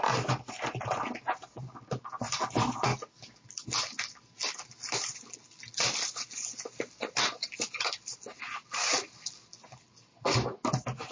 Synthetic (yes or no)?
no